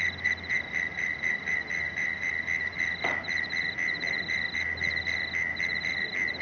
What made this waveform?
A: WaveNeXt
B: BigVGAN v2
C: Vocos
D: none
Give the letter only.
D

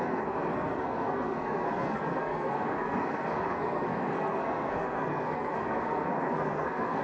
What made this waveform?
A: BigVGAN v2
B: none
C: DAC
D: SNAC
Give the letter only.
D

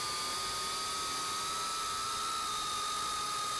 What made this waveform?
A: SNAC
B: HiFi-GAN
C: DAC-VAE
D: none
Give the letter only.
D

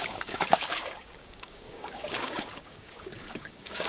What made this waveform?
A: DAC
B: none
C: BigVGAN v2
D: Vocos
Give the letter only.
A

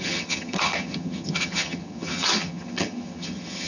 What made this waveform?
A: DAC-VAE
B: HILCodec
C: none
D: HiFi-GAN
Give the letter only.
D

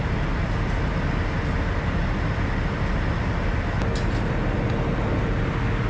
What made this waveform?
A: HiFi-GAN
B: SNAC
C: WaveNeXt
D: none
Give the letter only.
D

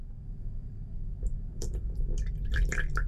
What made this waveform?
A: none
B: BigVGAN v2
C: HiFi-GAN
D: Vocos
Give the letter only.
B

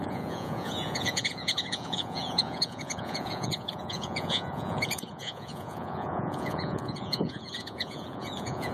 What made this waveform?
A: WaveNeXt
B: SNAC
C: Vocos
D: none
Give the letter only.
C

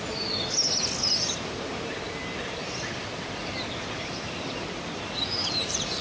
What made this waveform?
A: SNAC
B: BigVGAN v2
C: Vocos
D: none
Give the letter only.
D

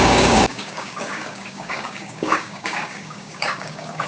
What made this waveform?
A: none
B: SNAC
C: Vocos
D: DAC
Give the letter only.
D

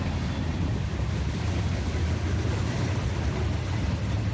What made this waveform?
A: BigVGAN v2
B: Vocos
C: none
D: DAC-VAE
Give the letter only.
C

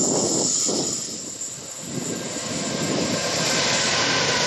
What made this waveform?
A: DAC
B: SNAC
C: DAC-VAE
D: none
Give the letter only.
D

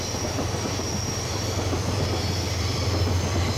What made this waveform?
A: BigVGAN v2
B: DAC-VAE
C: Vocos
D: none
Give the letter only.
A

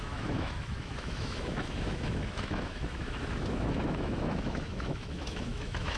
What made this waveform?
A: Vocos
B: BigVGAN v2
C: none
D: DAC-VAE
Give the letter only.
D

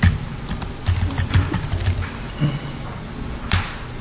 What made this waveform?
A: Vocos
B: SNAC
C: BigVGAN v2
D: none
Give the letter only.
D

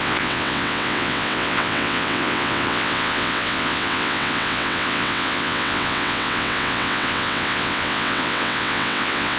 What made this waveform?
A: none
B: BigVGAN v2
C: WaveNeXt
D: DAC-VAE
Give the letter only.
C